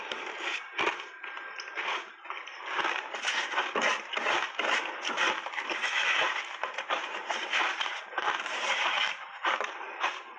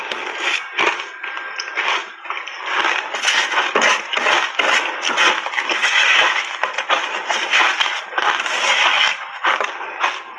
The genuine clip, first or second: second